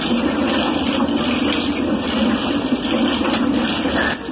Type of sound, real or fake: real